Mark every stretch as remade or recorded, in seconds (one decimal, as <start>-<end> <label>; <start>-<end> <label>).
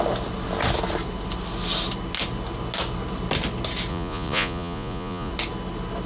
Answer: 0.0-3.9 recorded; 3.9-5.3 remade; 5.3-6.1 recorded